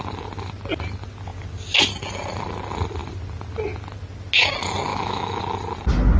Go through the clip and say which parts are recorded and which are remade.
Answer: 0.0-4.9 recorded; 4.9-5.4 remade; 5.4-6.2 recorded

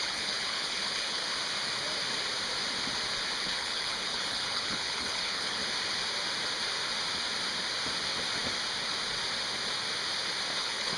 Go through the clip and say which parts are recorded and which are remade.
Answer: 0.0-1.2 remade; 1.2-3.4 recorded; 3.4-5.6 remade; 5.6-10.6 recorded; 10.6-11.0 remade

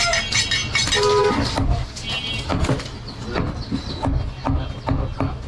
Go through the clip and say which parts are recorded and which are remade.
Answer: 0.0-5.5 recorded

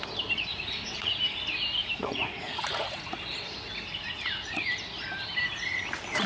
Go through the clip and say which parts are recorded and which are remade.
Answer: 0.0-0.5 recorded; 0.5-1.1 remade; 1.1-1.8 recorded; 1.8-3.2 remade; 3.2-4.0 recorded; 4.0-4.6 remade; 4.6-6.3 recorded